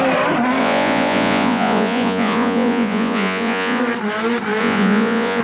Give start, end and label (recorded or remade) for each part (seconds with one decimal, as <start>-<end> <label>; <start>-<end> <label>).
0.0-0.6 recorded; 0.6-3.8 remade; 3.8-4.6 recorded; 4.6-5.4 remade

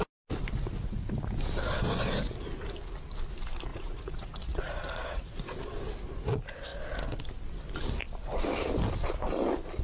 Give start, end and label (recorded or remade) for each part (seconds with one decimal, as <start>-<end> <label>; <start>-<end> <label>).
0.0-3.7 recorded; 3.7-5.6 remade; 5.6-9.8 recorded